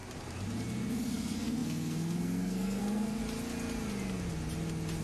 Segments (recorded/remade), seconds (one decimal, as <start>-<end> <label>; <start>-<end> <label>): 0.0-0.9 recorded; 0.9-3.2 remade; 3.2-5.0 recorded